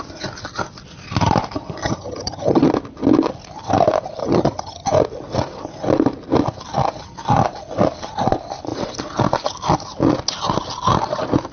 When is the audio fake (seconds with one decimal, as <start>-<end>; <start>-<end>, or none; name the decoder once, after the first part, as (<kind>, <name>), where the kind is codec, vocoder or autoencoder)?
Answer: 1.8-2.7 (vocoder, HiFi-GAN); 4.2-4.9